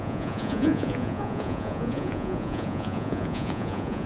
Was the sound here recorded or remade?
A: remade